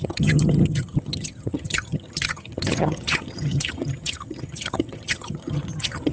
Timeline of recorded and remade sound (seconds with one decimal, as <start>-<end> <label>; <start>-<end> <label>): 0.0-6.1 remade